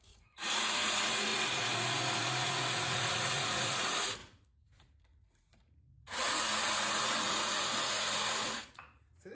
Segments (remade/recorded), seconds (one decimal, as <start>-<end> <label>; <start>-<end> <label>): 0.0-9.3 remade

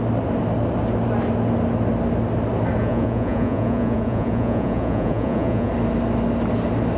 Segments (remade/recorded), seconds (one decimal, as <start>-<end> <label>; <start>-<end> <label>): 0.0-2.8 recorded; 2.8-5.7 remade; 5.7-7.0 recorded

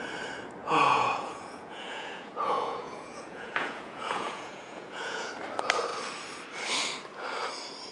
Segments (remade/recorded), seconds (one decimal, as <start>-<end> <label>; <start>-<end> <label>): 0.0-0.6 recorded; 0.6-5.3 remade; 5.3-7.9 recorded

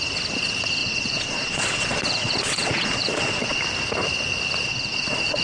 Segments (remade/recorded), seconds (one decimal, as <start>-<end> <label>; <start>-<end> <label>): 0.0-0.8 recorded; 0.8-3.6 remade; 3.6-4.7 recorded; 4.7-5.4 remade

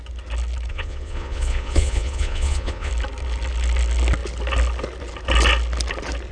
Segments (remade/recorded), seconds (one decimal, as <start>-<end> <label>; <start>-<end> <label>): 0.0-0.7 recorded; 0.7-2.9 remade; 2.9-6.3 recorded